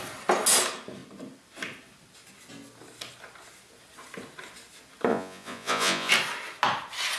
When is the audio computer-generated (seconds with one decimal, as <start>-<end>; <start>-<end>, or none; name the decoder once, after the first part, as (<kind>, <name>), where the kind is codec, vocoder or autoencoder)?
5.1-6.1 (vocoder, Vocos)